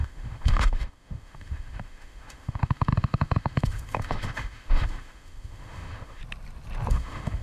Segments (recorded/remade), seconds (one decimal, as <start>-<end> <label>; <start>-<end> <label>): 0.0-6.2 remade; 6.2-6.9 recorded; 6.9-7.4 remade